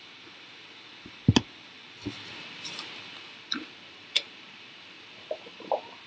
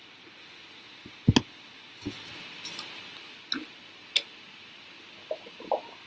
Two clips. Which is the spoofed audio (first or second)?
first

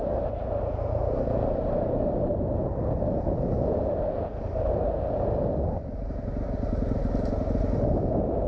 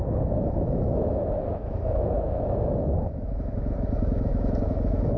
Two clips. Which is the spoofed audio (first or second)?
second